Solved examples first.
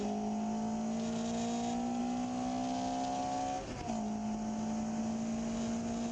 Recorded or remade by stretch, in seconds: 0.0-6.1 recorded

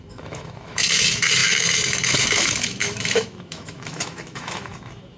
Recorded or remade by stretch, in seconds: 0.0-5.2 remade

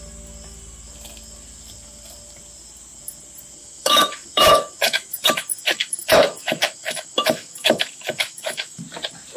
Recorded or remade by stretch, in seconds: 0.0-3.6 recorded; 3.6-8.8 remade; 8.8-9.4 recorded

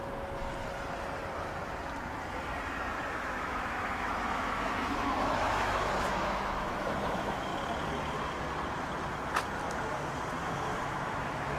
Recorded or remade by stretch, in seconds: 0.0-3.1 recorded; 3.1-7.5 remade; 7.5-10.4 recorded; 10.4-11.6 remade

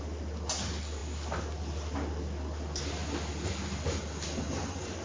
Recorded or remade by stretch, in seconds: 0.0-5.0 recorded

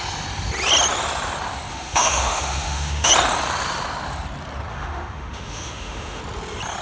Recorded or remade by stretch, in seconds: 0.0-1.7 recorded; 1.7-3.1 remade; 3.1-4.7 recorded; 4.7-6.2 remade; 6.2-6.8 recorded

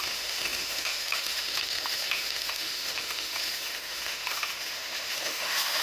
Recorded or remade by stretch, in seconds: 0.0-5.8 remade

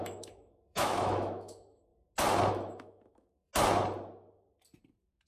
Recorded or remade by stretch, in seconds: 0.0-1.9 remade; 1.9-2.5 recorded; 2.5-3.5 remade; 3.5-5.3 recorded